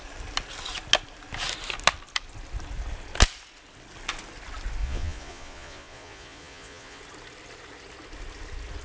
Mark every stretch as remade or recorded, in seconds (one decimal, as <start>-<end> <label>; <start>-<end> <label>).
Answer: 0.0-4.8 recorded; 4.8-7.0 remade; 7.0-8.8 recorded